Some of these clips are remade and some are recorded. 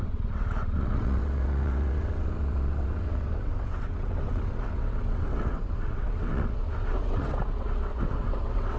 remade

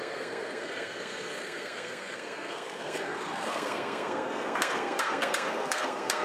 remade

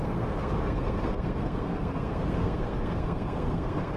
remade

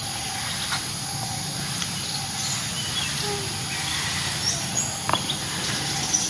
recorded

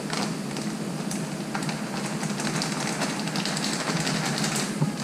recorded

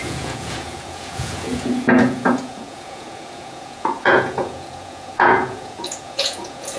remade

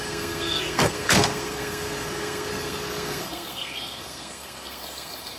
remade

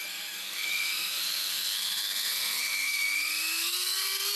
remade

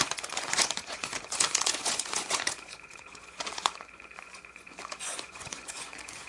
remade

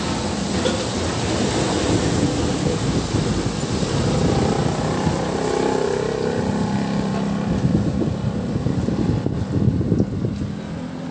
recorded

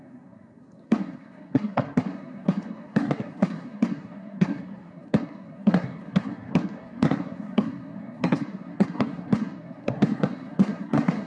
remade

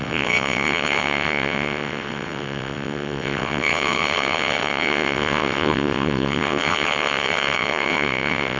remade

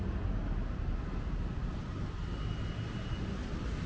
recorded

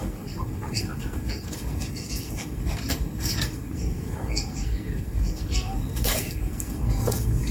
remade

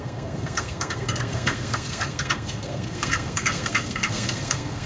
remade